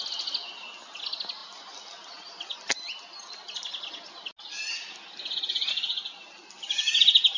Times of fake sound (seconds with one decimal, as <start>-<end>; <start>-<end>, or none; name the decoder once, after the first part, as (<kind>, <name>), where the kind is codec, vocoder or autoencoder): none